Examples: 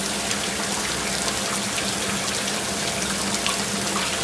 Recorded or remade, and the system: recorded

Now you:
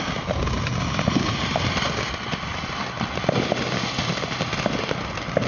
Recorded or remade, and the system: recorded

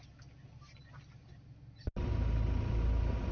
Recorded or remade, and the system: recorded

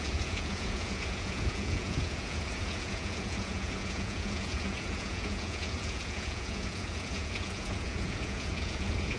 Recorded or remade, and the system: remade, vocoder, Vocos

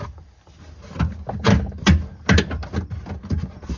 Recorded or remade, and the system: recorded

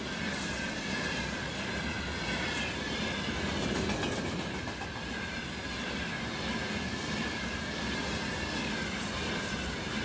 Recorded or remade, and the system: recorded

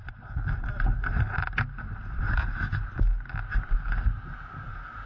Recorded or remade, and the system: recorded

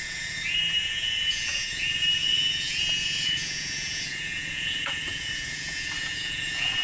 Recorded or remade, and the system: remade, vocoder, Vocos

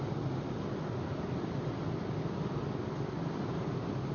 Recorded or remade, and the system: recorded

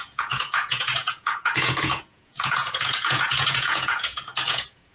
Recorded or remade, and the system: remade, vocoder, Vocos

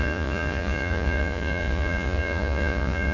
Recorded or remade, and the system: remade, vocoder, Vocos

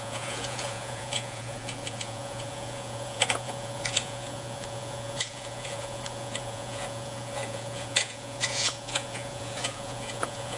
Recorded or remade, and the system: remade, vocoder, Vocos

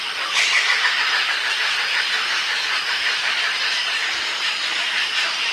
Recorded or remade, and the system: recorded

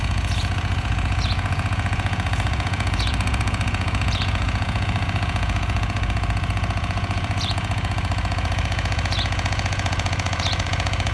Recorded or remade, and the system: remade, vocoder, Vocos